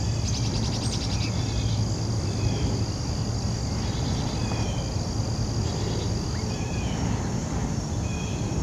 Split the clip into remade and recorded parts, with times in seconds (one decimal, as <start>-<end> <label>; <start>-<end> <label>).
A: 0.0-3.2 remade; 3.2-6.0 recorded; 6.0-8.6 remade